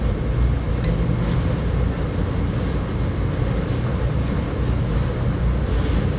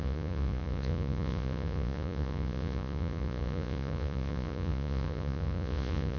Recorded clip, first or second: first